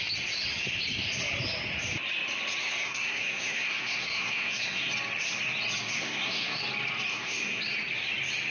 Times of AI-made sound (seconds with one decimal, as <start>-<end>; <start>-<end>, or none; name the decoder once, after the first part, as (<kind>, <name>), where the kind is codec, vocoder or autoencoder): 2.6-4.9 (codec, SNAC); 5.9-6.6; 7.1-7.6